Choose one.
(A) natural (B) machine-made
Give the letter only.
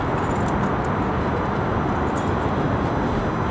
A